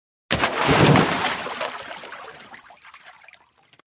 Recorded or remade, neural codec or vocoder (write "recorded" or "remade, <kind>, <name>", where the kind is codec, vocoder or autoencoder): recorded